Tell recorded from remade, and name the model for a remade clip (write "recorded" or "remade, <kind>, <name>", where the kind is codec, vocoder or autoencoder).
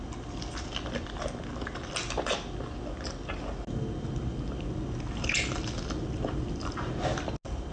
recorded